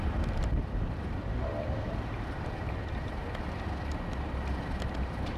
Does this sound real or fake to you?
real